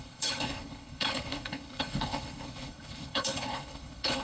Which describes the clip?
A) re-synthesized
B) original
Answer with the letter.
A